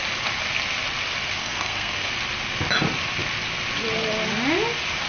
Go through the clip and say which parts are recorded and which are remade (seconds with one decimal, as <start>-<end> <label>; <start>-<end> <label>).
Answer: 0.0-1.4 recorded; 1.4-2.1 remade; 2.1-5.1 recorded